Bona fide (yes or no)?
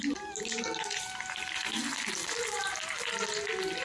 yes